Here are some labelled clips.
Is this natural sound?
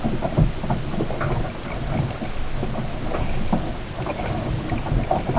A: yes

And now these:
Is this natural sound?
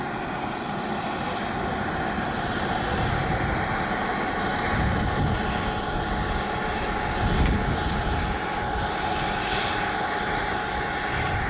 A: yes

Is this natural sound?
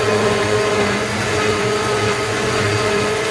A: no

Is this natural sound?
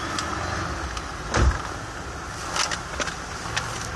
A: yes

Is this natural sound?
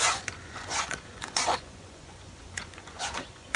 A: no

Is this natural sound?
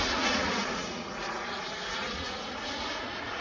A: no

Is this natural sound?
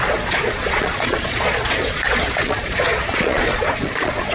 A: no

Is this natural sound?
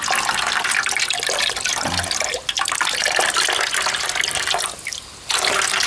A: yes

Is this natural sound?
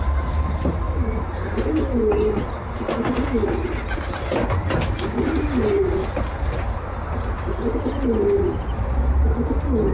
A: yes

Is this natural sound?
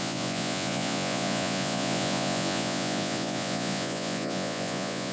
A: no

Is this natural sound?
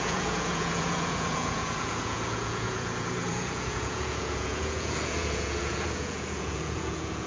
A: no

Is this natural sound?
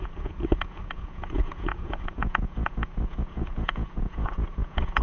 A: no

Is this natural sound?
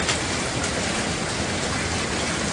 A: yes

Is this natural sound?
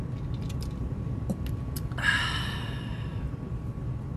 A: yes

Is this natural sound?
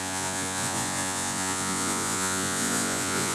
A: no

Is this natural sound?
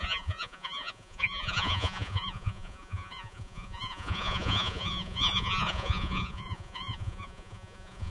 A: no